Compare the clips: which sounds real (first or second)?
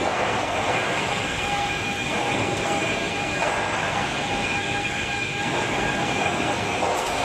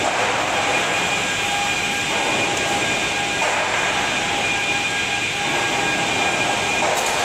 second